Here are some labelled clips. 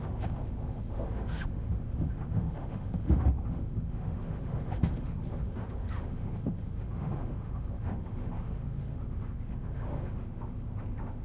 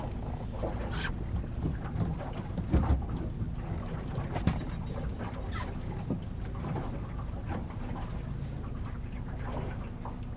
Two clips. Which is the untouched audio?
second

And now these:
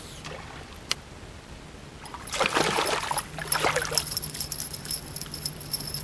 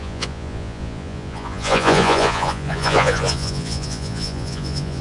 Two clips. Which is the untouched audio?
first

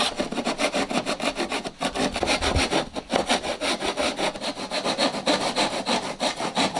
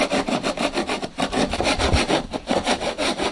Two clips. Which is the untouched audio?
first